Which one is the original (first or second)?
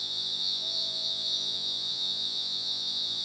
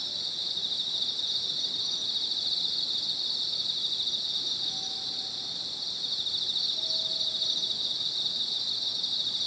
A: second